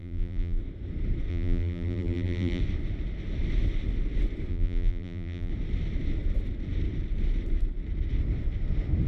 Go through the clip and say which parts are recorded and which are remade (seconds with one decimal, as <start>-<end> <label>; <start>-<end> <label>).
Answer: 0.0-0.6 remade; 0.6-1.3 recorded; 1.3-2.6 remade; 2.6-4.5 recorded; 4.5-5.5 remade; 5.5-9.1 recorded